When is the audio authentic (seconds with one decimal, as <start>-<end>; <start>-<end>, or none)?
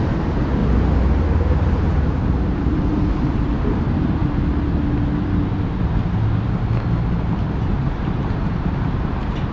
0.6-1.6; 4.2-7.6